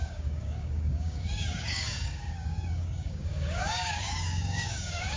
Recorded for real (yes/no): no